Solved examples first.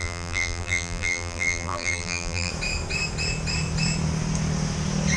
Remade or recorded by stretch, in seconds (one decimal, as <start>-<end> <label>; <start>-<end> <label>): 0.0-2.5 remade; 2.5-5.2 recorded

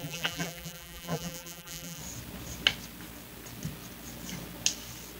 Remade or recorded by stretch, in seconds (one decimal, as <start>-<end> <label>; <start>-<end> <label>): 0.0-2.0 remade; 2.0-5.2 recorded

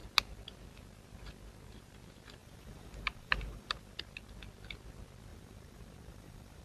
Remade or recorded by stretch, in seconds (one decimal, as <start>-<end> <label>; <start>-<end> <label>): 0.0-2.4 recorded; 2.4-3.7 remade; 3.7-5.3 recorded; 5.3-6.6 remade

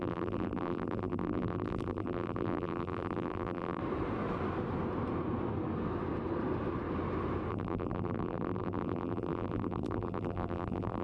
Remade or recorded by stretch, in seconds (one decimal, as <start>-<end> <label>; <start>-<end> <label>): 0.0-3.8 remade; 3.8-7.5 recorded; 7.5-11.0 remade

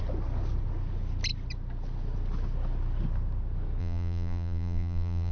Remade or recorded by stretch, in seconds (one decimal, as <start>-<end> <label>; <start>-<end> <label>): 0.0-3.8 recorded; 3.8-5.3 remade

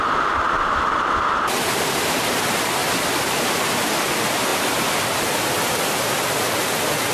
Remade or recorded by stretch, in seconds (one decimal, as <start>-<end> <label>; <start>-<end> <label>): 0.0-7.1 recorded

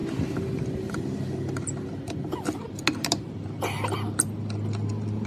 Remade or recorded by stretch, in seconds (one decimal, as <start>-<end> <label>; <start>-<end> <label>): 0.0-5.3 recorded

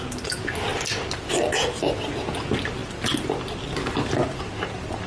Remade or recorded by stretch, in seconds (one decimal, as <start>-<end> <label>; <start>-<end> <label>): 0.0-5.1 recorded